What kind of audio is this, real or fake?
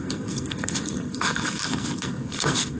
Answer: fake